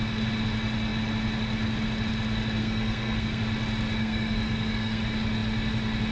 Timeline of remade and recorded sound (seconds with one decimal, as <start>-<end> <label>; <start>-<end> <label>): 0.0-2.6 recorded; 2.6-3.4 remade; 3.4-4.0 recorded; 4.0-5.0 remade; 5.0-6.1 recorded